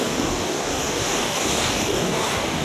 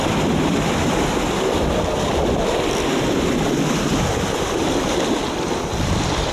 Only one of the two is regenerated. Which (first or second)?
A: first